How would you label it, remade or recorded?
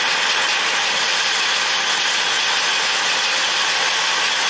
recorded